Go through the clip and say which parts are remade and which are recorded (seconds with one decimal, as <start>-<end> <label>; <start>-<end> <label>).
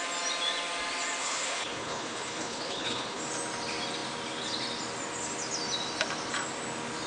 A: 0.0-1.2 recorded; 1.2-3.2 remade; 3.2-7.1 recorded